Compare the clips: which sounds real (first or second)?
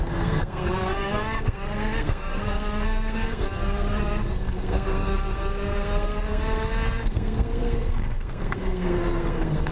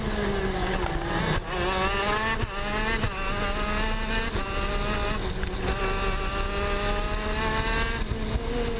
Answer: second